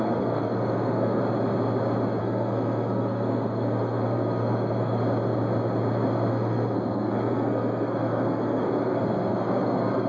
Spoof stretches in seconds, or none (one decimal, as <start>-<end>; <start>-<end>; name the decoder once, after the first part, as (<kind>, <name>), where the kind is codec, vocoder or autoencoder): 0.0-1.2 (codec, SNAC); 2.2-5.0; 6.3-10.1